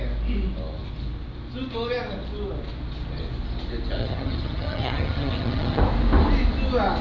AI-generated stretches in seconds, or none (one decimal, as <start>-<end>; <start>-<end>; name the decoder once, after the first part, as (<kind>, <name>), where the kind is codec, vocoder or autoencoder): 4.0-5.8 (vocoder, HiFi-GAN)